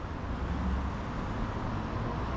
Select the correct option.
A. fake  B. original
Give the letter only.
B